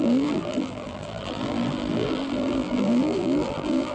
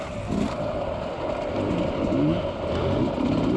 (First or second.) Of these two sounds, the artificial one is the first